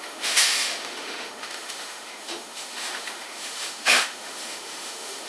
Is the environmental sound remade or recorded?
remade